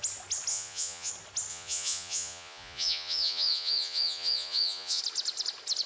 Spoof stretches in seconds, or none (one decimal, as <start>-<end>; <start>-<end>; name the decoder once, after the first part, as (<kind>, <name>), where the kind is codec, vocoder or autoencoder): 0.5-1.1 (vocoder, Vocos); 1.5-5.0